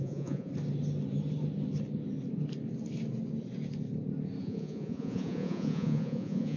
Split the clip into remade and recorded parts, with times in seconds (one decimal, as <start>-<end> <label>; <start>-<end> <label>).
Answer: 0.0-0.5 remade; 0.5-4.4 recorded; 4.4-6.6 remade